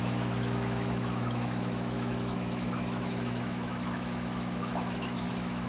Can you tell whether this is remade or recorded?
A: remade